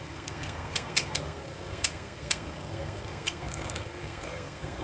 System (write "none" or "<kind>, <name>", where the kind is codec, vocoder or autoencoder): codec, SNAC